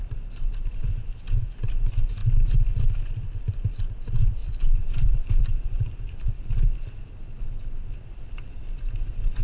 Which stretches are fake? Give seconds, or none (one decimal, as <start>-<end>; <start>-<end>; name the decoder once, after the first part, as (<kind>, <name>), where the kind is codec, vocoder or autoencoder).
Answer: 4.4-6.3 (vocoder, BigVGAN v2)